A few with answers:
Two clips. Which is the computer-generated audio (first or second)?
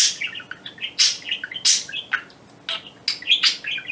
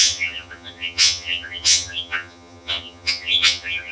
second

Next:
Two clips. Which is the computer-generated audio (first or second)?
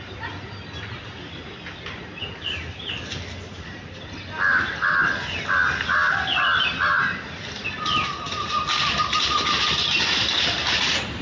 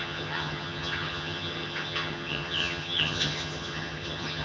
second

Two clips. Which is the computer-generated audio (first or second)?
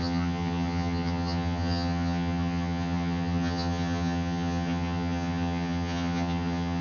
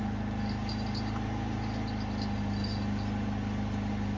first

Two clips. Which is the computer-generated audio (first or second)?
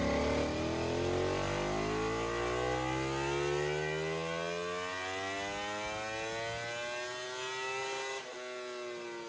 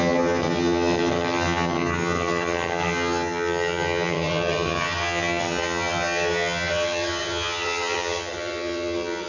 second